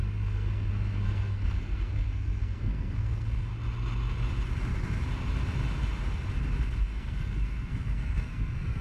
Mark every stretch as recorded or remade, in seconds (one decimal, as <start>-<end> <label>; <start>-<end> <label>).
0.0-3.5 remade; 3.5-6.6 recorded; 6.6-8.8 remade